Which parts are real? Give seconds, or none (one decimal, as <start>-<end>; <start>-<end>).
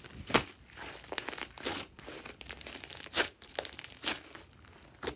0.0-5.2